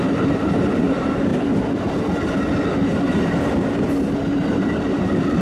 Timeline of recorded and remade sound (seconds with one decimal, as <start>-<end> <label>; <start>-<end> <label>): 0.0-1.3 remade; 1.3-4.5 recorded; 4.5-5.4 remade